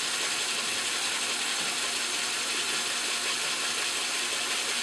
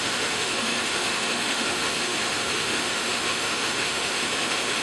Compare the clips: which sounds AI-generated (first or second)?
second